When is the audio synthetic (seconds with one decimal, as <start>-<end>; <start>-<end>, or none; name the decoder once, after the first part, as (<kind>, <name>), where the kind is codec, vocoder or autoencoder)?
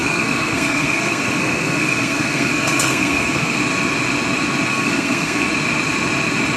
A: 0.0-3.6 (codec, SNAC); 4.7-5.5